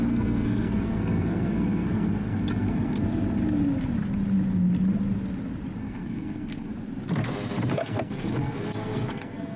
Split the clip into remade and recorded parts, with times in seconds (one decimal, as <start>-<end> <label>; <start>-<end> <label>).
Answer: 0.0-3.0 remade; 3.0-5.8 recorded; 5.8-6.7 remade; 6.7-7.7 recorded; 7.7-9.6 remade